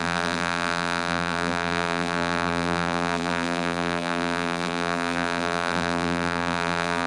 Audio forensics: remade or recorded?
remade